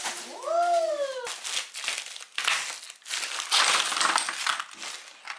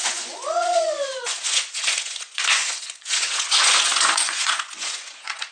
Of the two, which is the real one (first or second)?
first